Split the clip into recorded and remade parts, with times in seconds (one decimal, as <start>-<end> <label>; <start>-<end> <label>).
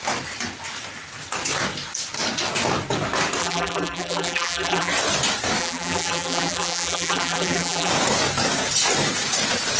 0.0-3.4 recorded; 3.4-4.9 remade; 4.9-5.6 recorded; 5.6-7.9 remade; 7.9-9.8 recorded